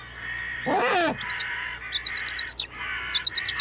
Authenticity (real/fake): real